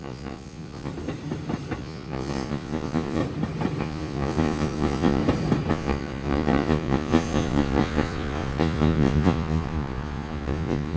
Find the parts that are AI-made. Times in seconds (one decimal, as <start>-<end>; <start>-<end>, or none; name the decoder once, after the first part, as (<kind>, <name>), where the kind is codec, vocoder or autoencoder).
0.0-0.9 (vocoder, Vocos); 1.8-3.2; 3.8-5.2; 5.7-11.0